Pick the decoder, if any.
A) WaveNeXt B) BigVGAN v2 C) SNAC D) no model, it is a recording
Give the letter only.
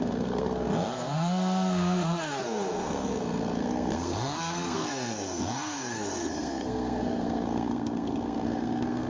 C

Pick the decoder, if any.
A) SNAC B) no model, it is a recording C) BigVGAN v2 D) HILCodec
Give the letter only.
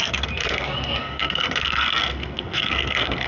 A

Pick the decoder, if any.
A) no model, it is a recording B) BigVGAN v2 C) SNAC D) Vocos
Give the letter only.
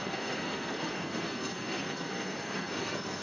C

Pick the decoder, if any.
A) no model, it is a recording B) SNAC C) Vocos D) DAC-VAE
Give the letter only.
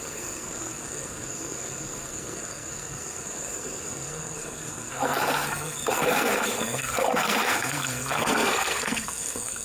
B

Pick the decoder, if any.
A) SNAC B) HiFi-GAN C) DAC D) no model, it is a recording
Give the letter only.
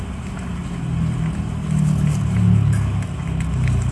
D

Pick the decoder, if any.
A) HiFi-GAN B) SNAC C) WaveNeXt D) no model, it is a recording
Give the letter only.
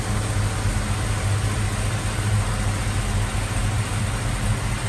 D